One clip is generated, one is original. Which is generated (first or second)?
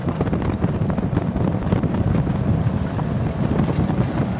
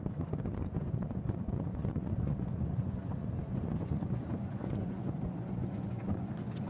second